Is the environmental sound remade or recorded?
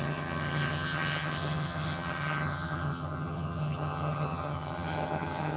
remade